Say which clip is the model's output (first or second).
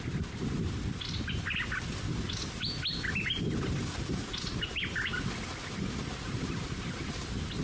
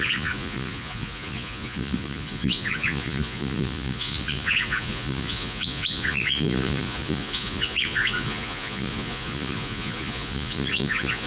second